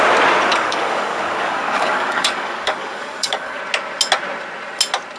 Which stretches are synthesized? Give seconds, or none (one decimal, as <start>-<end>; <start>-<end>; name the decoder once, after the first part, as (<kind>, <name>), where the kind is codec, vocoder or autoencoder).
0.5-3.6 (codec, DAC)